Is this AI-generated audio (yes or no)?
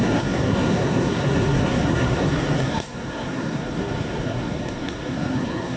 yes